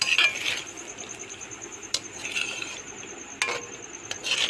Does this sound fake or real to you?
real